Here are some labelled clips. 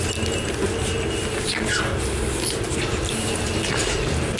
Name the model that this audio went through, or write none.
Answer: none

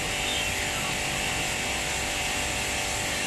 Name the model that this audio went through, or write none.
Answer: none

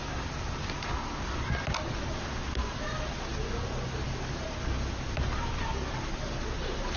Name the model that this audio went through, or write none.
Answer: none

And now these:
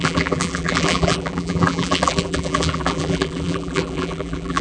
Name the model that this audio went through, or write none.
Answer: vocoder, BigVGAN v2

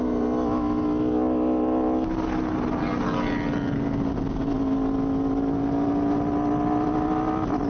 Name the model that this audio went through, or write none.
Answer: none